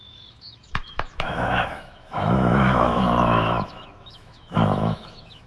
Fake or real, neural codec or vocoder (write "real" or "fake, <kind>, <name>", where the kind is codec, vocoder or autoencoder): fake, autoencoder, DAC-VAE